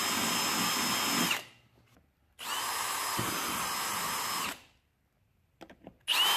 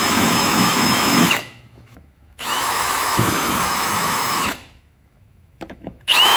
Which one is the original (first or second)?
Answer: first